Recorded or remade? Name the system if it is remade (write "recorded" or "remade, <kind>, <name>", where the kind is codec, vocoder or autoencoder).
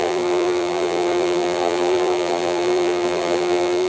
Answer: remade, vocoder, BigVGAN v2